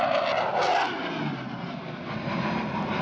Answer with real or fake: real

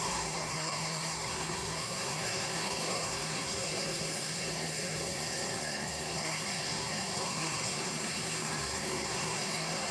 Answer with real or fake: fake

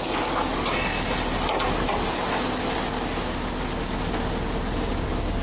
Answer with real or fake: real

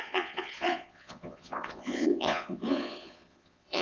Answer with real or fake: fake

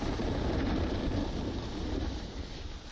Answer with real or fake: real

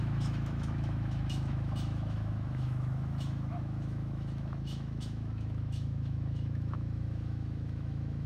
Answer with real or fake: fake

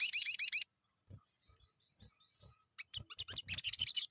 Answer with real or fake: real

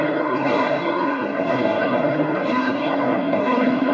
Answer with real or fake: fake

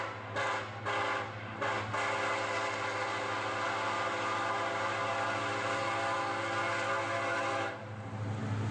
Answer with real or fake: real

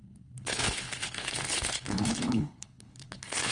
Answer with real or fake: fake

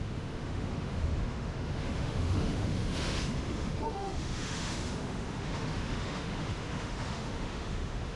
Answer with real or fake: fake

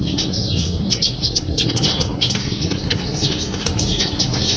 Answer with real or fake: fake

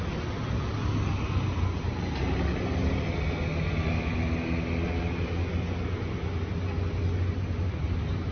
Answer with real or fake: real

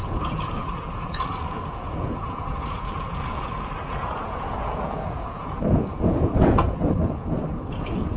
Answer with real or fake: fake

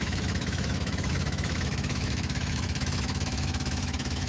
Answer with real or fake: fake